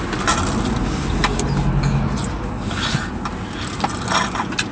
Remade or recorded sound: recorded